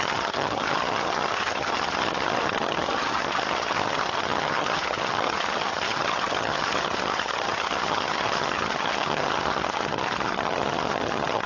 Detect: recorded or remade remade